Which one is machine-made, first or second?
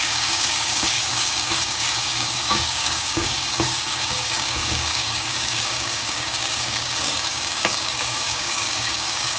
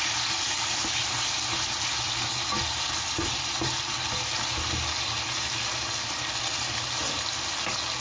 first